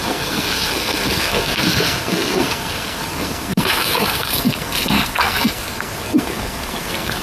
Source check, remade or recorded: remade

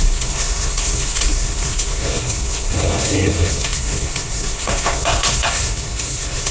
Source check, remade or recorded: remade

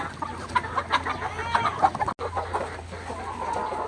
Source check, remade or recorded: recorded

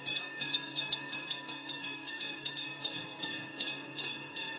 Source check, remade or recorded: remade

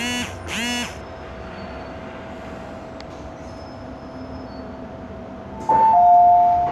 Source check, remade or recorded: recorded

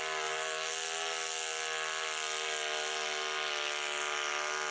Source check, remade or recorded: recorded